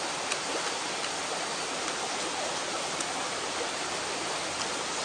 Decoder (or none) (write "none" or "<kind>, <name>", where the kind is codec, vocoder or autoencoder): none